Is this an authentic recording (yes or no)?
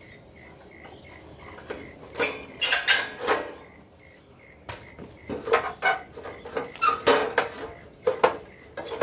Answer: yes